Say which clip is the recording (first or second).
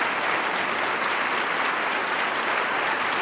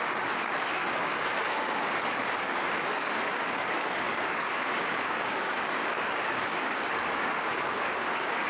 first